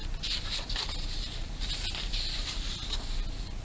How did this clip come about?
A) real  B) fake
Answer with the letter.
A